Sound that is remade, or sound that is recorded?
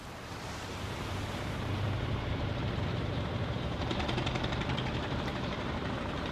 remade